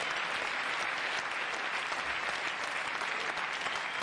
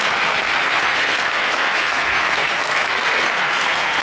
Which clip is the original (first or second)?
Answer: first